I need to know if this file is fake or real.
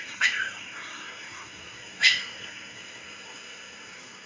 fake